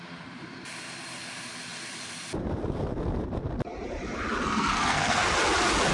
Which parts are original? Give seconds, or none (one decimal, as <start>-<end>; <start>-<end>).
0.0-4.4; 5.3-5.9